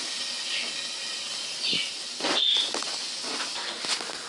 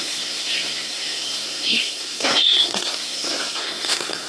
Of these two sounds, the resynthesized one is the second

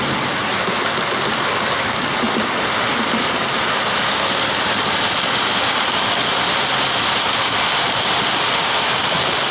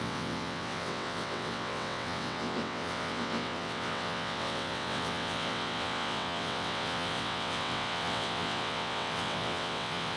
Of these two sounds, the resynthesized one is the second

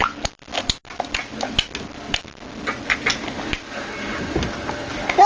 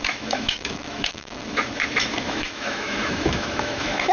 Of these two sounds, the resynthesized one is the second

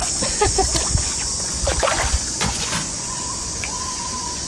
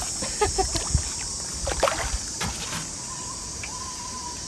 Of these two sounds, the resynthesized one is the first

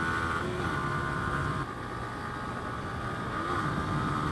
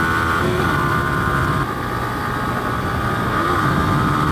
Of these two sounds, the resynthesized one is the second